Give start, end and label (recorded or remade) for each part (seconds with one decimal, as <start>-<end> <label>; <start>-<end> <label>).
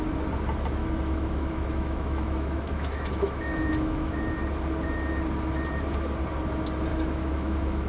0.0-0.8 recorded; 0.8-4.2 remade; 4.2-6.9 recorded; 6.9-7.9 remade